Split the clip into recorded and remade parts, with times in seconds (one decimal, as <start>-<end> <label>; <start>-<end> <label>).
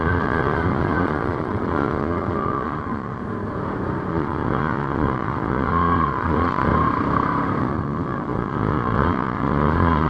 0.0-3.2 remade; 3.2-4.1 recorded; 4.1-6.7 remade; 6.7-7.6 recorded; 7.6-10.1 remade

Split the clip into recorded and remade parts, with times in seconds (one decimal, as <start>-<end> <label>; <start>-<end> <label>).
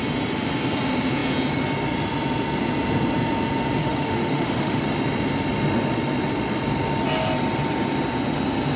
0.0-3.8 recorded; 3.8-4.8 remade; 4.8-8.8 recorded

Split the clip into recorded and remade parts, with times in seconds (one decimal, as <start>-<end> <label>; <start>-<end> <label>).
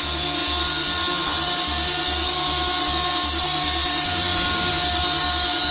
0.0-5.7 recorded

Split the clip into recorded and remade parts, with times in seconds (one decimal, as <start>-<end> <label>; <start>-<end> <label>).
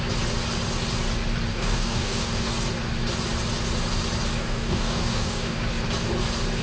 0.0-1.5 recorded; 1.5-2.5 remade; 2.5-4.4 recorded; 4.4-5.6 remade; 5.6-6.6 recorded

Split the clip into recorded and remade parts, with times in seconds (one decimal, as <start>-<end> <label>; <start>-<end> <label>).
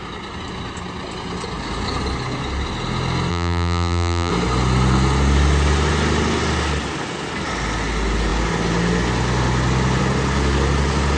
0.0-3.3 recorded; 3.3-4.3 remade; 4.3-11.2 recorded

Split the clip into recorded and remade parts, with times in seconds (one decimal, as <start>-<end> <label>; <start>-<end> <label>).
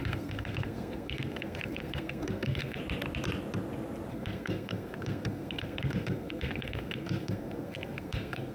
0.0-2.8 remade; 2.8-4.1 recorded; 4.1-8.5 remade